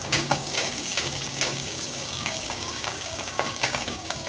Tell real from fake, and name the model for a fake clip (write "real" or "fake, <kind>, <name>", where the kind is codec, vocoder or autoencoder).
fake, codec, DAC